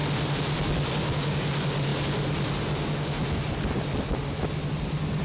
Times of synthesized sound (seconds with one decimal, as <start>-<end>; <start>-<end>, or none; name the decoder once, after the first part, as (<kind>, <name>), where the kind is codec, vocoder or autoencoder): none